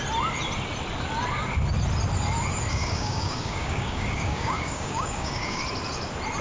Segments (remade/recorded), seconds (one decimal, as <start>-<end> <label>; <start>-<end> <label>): 0.0-2.7 recorded; 2.7-5.6 remade; 5.6-6.4 recorded